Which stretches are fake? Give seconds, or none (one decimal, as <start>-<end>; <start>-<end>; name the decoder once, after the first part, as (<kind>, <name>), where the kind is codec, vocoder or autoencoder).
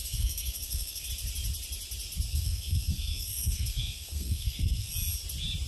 0.0-1.1 (codec, SNAC); 2.3-4.9